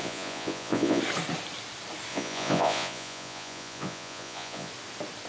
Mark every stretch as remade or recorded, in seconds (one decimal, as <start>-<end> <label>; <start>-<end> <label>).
0.0-1.0 remade; 1.0-2.1 recorded; 2.1-4.7 remade; 4.7-5.3 recorded